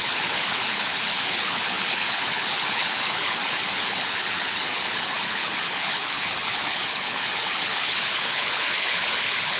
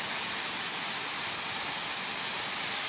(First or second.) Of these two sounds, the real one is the second